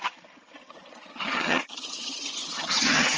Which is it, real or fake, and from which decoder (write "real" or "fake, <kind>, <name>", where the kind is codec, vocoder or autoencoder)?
fake, vocoder, HiFi-GAN